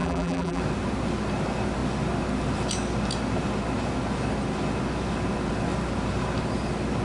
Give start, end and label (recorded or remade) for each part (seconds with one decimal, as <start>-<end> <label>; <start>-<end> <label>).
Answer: 0.0-0.6 remade; 0.6-7.0 recorded